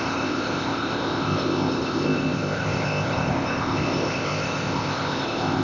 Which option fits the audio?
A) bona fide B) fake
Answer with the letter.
B